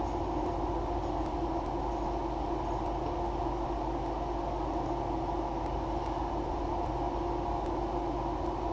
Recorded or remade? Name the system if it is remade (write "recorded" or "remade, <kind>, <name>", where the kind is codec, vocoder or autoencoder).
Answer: recorded